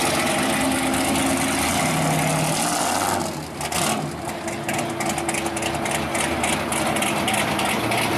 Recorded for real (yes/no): yes